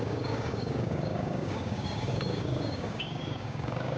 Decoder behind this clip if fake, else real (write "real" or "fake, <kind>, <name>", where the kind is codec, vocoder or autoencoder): fake, codec, DAC